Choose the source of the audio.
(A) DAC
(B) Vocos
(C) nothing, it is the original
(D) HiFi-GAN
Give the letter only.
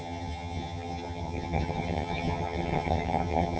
D